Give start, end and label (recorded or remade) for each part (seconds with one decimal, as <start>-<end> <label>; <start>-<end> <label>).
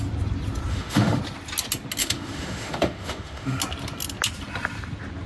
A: 0.0-0.7 recorded; 0.7-1.2 remade; 1.2-2.0 recorded; 2.0-3.6 remade; 3.6-5.3 recorded